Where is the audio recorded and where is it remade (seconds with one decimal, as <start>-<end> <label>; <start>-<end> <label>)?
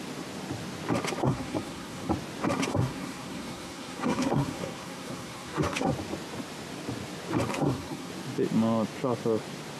0.0-1.2 recorded; 1.2-2.1 remade; 2.1-2.7 recorded; 2.7-5.9 remade; 5.9-7.5 recorded; 7.5-8.1 remade; 8.1-9.8 recorded